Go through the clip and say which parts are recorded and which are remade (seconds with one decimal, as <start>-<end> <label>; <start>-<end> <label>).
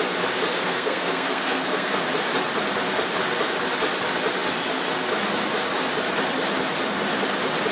0.0-0.5 recorded; 0.5-2.0 remade; 2.0-7.7 recorded